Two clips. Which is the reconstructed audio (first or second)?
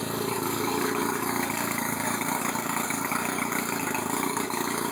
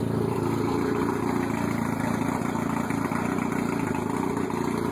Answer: first